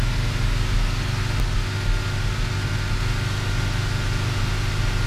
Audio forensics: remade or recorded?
recorded